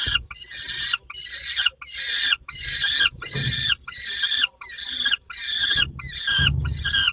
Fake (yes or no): no